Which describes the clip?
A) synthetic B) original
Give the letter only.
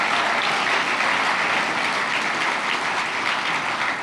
B